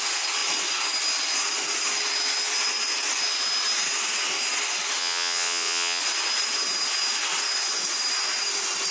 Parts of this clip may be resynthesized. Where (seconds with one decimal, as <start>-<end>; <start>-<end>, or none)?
5.0-6.0